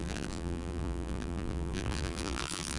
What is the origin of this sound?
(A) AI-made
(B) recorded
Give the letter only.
A